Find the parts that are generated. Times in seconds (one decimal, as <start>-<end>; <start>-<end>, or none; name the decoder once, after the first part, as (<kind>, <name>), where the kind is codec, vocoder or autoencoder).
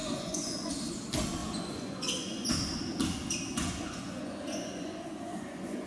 0.0-0.7 (vocoder, Vocos); 1.4-2.5; 3.5-5.9